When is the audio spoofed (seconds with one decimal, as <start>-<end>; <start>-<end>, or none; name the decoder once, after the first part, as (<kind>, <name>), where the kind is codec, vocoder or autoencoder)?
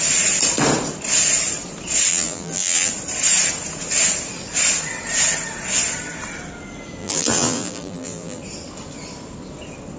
2.1-2.9 (vocoder, BigVGAN v2); 7.0-8.4